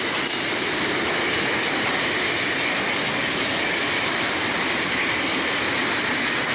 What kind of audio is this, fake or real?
real